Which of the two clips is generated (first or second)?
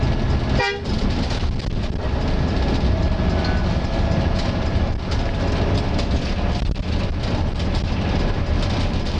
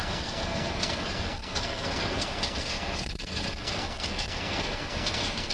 second